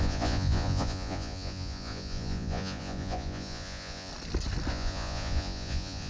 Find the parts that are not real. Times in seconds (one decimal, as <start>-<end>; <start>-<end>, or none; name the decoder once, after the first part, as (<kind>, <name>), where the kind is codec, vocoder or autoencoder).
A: 0.0-4.1 (vocoder, Vocos); 4.7-6.1